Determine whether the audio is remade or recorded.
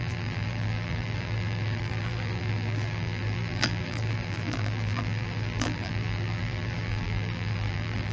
remade